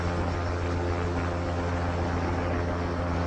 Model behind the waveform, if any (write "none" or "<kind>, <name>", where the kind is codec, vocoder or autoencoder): none